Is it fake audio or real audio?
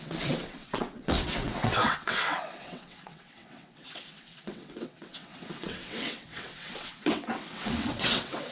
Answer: fake